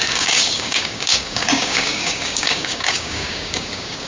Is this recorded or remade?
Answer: remade